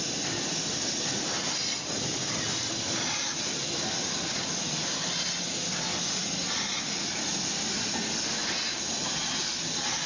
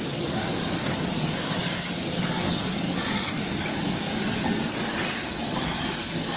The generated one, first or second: second